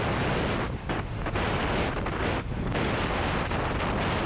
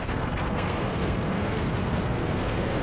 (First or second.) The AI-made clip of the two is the second